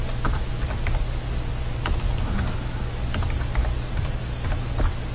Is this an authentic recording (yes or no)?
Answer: yes